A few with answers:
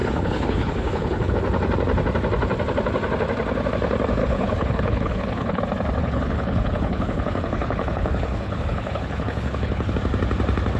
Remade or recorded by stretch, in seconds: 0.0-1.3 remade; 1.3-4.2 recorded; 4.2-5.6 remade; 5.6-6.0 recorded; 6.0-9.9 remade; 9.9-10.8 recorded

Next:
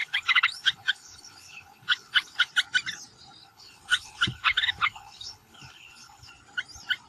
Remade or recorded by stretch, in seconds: 0.0-2.5 remade; 2.5-3.4 recorded; 3.4-6.3 remade; 6.3-7.1 recorded

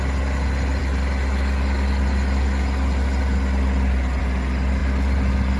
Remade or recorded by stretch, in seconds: 0.0-5.6 recorded

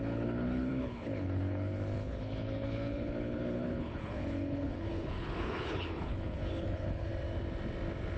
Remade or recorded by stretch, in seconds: 0.0-7.1 remade; 7.1-8.2 recorded

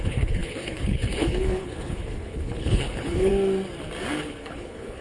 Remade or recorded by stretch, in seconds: 0.0-3.3 remade; 3.3-4.2 recorded; 4.2-5.0 remade

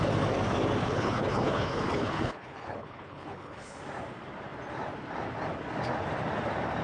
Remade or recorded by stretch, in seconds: 0.0-0.8 recorded; 0.8-3.8 remade; 3.8-6.8 recorded

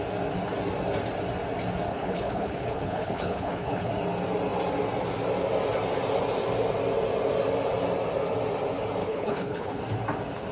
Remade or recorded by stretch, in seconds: 0.0-1.9 recorded; 1.9-3.9 remade; 3.9-9.0 recorded; 9.0-9.8 remade; 9.8-10.5 recorded

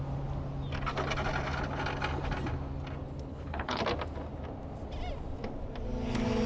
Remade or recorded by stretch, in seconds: 0.0-3.3 recorded; 3.3-3.8 remade; 3.8-6.5 recorded